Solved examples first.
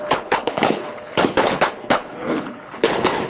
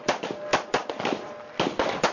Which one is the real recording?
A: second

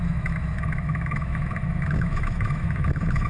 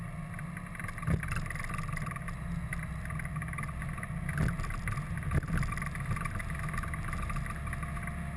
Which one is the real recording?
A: second